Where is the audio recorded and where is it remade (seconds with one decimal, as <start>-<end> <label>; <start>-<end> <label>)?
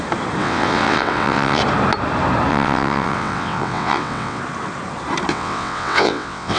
0.0-0.4 recorded; 0.4-1.6 remade; 1.6-2.5 recorded; 2.5-4.4 remade; 4.4-5.3 recorded; 5.3-6.6 remade